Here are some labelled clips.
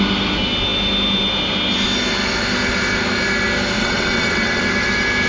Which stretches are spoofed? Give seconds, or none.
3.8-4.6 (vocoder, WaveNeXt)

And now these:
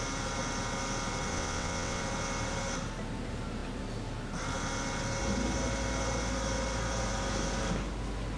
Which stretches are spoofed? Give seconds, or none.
1.3-2.0 (vocoder, WaveNeXt)

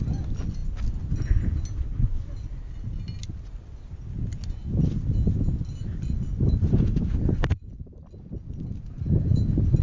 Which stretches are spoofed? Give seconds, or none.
none

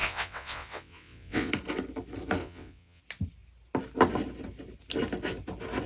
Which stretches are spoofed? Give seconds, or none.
0.0-1.5 (vocoder, WaveNeXt); 2.4-3.0

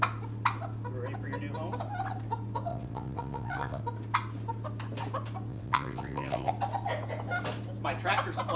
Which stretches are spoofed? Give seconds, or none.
2.7-3.8 (vocoder, WaveNeXt); 5.5-6.5

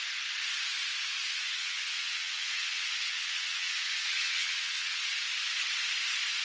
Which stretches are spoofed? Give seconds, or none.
1.2-5.0 (vocoder, WaveNeXt)

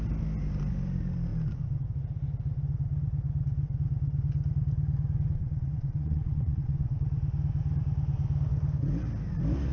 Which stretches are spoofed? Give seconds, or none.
5.4-7.0 (vocoder, WaveNeXt)

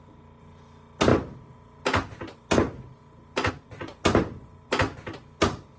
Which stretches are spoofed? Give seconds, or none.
none